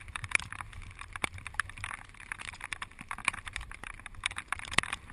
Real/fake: fake